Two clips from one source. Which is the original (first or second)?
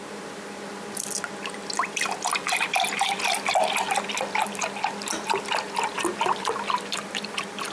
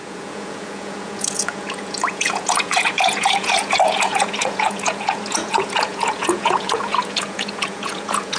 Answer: first